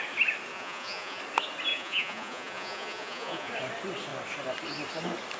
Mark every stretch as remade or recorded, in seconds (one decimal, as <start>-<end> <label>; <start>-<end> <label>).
0.0-0.5 recorded; 0.5-1.2 remade; 1.2-1.7 recorded; 1.7-3.5 remade; 3.5-5.4 recorded